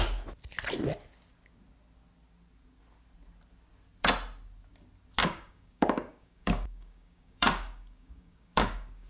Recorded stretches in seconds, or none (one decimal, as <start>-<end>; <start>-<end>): 0.0-5.2